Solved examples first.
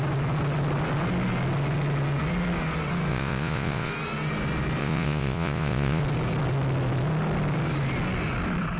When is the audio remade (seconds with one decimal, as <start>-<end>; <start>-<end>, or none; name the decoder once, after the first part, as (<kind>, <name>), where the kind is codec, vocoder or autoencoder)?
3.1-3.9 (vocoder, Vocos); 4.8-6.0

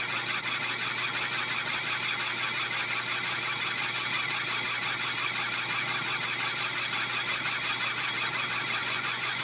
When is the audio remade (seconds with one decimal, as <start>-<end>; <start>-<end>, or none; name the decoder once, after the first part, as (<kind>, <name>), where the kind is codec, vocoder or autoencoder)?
8.8-9.4 (vocoder, Vocos)

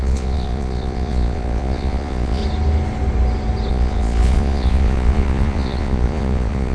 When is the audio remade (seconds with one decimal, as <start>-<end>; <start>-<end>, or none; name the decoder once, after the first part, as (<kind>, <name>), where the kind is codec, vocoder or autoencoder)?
0.0-2.4 (vocoder, Vocos); 3.7-6.7